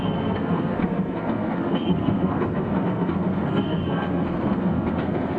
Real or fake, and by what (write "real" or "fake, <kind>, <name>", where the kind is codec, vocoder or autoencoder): fake, codec, SNAC